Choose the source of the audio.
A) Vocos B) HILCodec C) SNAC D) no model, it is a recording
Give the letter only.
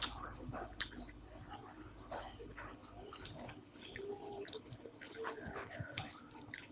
B